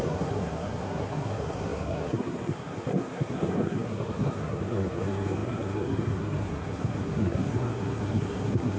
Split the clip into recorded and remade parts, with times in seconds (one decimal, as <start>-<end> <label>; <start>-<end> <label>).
0.0-8.8 remade